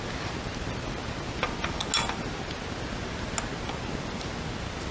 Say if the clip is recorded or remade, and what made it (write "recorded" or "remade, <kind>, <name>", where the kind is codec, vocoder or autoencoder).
recorded